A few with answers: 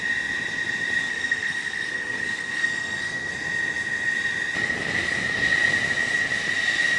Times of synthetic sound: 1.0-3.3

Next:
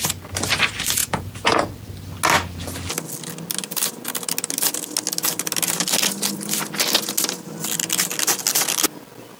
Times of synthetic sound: 1.0-1.6

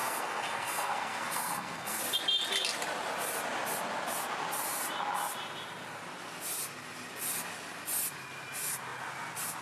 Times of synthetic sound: 0.0-2.0